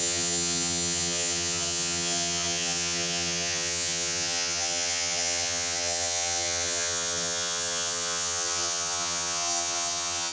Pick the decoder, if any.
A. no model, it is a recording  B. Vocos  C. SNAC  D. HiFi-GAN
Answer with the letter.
D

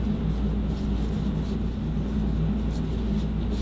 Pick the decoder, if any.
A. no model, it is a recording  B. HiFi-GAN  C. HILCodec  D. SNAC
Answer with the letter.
A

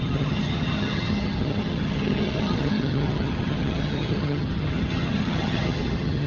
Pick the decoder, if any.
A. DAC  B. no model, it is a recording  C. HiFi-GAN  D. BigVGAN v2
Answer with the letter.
C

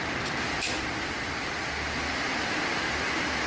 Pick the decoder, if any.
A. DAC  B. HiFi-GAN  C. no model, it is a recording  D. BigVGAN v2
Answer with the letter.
C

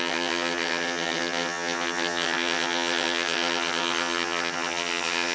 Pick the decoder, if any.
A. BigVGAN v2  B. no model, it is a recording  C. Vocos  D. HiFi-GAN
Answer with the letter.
D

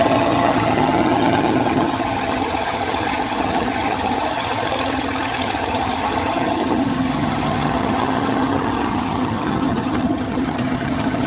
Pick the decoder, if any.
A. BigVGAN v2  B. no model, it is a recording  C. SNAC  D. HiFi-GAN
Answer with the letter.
D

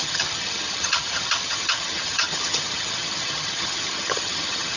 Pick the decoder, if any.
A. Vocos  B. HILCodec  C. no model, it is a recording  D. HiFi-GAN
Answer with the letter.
D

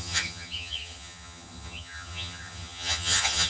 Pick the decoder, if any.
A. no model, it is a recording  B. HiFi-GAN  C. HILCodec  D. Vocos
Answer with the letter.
B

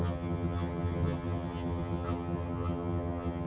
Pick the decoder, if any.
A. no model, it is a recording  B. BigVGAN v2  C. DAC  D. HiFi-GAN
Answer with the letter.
D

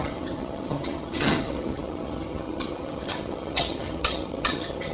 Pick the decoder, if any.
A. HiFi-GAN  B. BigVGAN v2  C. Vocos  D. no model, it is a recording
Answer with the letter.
A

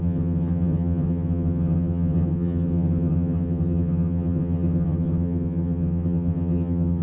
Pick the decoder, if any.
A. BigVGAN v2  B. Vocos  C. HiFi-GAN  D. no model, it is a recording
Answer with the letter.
C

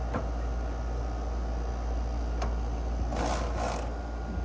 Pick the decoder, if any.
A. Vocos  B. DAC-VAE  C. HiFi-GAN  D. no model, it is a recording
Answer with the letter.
D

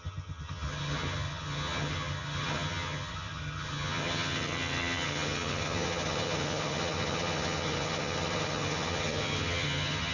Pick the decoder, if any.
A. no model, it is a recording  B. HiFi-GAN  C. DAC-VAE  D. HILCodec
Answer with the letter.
B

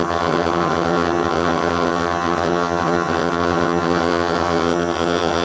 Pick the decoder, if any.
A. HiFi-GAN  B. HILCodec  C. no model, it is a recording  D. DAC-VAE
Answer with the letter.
A